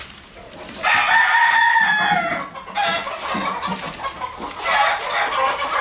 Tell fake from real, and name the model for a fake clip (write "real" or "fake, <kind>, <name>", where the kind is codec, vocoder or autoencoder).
real